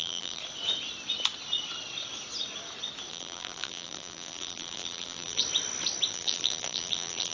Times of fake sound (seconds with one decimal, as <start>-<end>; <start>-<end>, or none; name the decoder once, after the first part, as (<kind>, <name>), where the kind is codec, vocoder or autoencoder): 0.0-0.4 (vocoder, BigVGAN v2); 3.1-5.4; 6.1-7.3